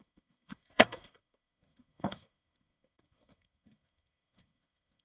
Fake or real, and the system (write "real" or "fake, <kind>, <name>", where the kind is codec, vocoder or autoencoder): fake, codec, SNAC